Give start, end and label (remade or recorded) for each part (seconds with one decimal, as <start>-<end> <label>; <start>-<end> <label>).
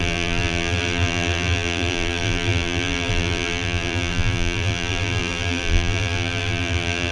0.0-7.1 remade